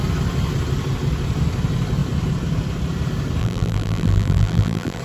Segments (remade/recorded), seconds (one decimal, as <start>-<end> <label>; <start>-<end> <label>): 0.0-3.4 recorded; 3.4-5.0 remade